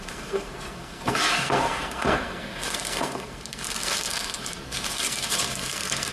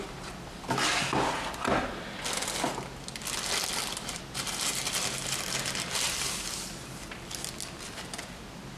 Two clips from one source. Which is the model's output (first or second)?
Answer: first